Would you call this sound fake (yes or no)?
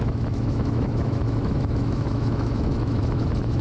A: yes